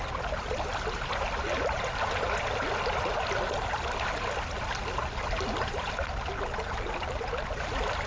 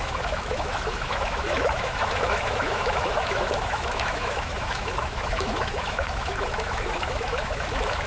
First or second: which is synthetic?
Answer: second